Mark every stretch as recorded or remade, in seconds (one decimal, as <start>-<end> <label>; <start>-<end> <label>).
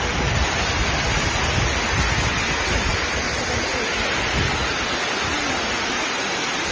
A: 0.0-6.7 recorded